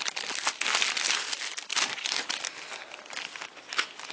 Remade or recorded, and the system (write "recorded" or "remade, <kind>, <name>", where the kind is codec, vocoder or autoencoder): recorded